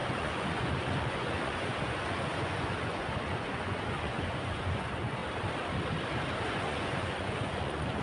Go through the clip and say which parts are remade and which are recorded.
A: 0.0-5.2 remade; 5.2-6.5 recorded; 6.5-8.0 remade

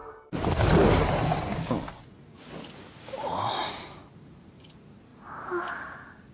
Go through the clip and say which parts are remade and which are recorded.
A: 0.0-0.9 remade; 0.9-3.6 recorded; 3.6-4.6 remade; 4.6-6.3 recorded

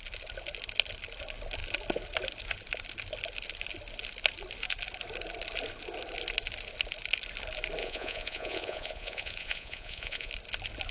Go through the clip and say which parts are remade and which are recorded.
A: 0.0-7.8 recorded; 7.8-10.3 remade; 10.3-10.9 recorded

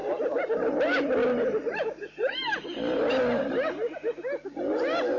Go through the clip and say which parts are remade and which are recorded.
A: 0.0-5.2 recorded

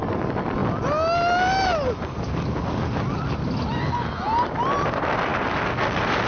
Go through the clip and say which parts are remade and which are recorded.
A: 0.0-6.3 recorded

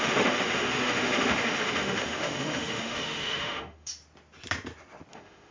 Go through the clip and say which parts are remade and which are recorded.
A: 0.0-3.9 remade; 3.9-5.1 recorded; 5.1-5.5 remade